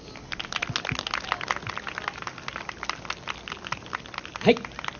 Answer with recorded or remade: recorded